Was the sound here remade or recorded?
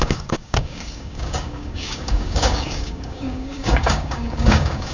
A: remade